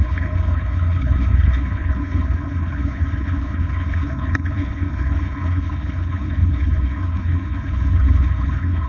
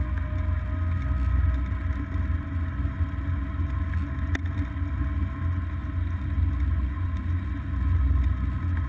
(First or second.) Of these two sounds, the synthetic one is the first